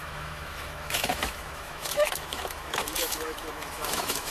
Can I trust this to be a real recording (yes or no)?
no